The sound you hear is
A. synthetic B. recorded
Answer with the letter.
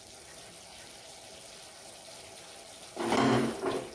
B